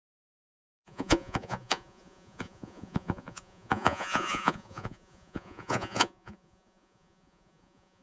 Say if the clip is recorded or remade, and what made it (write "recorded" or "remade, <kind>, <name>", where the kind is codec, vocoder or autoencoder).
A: remade, vocoder, Vocos